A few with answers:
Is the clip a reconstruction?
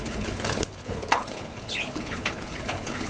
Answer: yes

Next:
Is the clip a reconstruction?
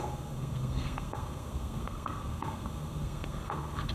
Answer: yes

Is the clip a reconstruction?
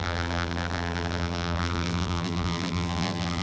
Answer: yes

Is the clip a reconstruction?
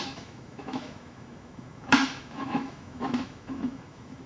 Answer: yes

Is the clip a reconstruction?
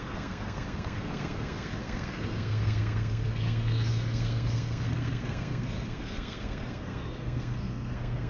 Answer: yes